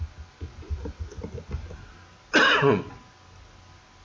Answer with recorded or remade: recorded